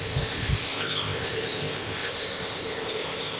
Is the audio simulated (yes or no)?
yes